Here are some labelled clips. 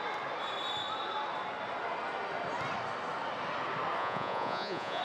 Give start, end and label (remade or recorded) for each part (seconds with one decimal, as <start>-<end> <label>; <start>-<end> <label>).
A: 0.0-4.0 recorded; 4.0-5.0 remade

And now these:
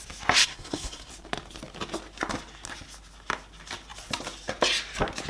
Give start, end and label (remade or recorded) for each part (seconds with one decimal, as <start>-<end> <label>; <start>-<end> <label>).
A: 0.0-0.4 recorded; 0.4-1.1 remade; 1.1-5.3 recorded

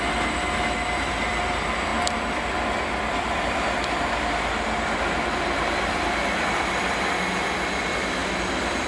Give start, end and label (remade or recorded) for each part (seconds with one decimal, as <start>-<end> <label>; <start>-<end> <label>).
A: 0.0-1.9 recorded; 1.9-7.1 remade; 7.1-8.9 recorded

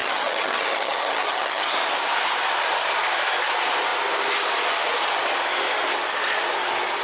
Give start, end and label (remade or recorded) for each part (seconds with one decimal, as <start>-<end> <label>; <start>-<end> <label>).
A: 0.0-1.7 remade; 1.7-7.0 recorded

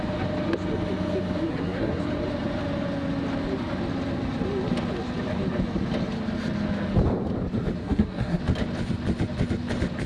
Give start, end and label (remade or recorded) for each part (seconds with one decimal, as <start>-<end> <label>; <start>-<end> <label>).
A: 0.0-1.5 recorded; 1.5-2.0 remade; 2.0-7.8 recorded; 7.8-8.4 remade; 8.4-10.1 recorded

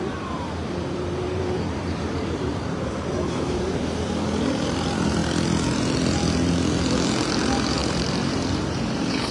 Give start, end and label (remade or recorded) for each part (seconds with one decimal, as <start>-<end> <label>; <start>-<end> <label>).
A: 0.0-5.2 remade; 5.2-7.3 recorded; 7.3-9.3 remade